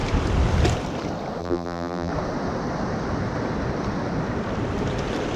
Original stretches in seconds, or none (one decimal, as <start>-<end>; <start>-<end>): 0.0-1.4; 2.1-5.4